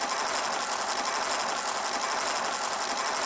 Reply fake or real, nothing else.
real